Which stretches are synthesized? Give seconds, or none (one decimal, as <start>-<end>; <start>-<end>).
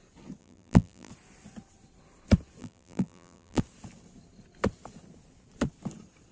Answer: 0.4-1.1; 2.6-3.6